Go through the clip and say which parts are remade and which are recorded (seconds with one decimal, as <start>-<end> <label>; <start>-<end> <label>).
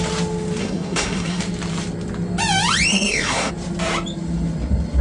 0.0-0.6 recorded; 0.6-1.4 remade; 1.4-2.9 recorded; 2.9-3.5 remade; 3.5-5.0 recorded